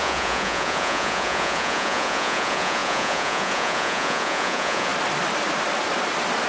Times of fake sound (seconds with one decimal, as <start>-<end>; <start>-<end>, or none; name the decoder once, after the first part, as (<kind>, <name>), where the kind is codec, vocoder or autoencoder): 0.0-4.9 (vocoder, Vocos)